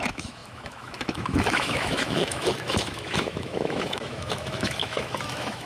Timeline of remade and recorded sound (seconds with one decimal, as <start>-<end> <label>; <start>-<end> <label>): 0.0-5.7 remade